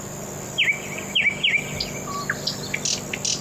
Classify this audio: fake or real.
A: real